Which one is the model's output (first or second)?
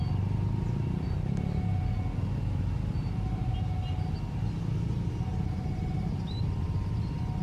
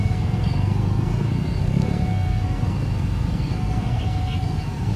second